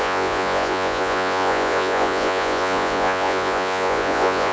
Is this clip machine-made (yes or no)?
yes